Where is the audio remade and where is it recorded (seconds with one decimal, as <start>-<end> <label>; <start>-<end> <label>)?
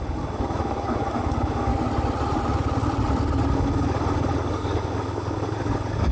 0.0-1.7 remade; 1.7-3.5 recorded; 3.5-6.1 remade